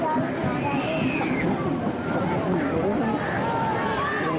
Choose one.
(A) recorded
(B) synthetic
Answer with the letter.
B